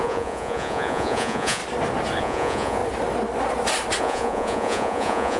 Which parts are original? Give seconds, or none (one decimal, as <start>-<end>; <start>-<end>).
1.6-2.2; 2.8-4.0